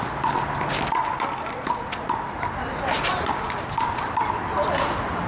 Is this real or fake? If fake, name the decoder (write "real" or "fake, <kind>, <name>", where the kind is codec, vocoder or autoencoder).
real